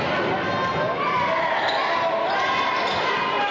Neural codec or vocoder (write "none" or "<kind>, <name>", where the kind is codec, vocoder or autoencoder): none